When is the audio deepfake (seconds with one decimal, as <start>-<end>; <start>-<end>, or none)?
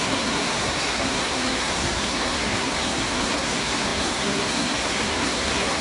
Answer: 0.0-5.8